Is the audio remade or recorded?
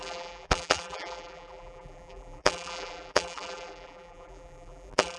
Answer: remade